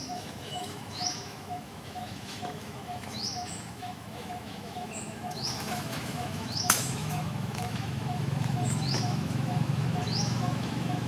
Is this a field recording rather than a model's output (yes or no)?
no